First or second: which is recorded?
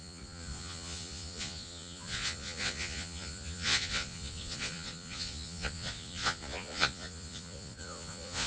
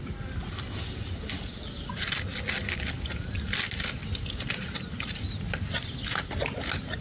second